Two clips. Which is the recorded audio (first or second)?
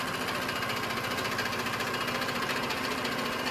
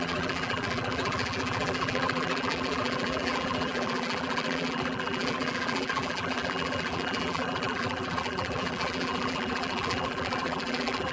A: first